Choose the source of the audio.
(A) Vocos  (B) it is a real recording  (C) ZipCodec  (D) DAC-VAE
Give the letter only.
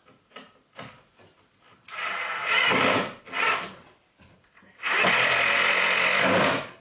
B